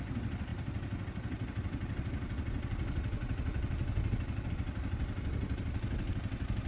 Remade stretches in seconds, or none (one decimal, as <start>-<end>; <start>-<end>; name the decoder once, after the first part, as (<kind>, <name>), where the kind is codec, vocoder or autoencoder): none